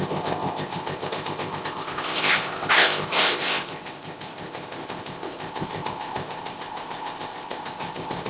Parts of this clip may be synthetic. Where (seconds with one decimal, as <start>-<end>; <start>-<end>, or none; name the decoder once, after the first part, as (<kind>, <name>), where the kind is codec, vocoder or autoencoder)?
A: 0.0-8.3 (codec, ZipCodec)